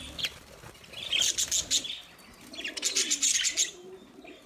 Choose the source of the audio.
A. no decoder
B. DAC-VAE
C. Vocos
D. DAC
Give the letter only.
A